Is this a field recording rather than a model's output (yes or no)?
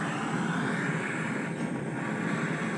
yes